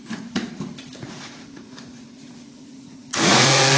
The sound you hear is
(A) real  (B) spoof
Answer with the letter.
B